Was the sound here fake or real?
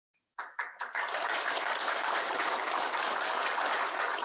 fake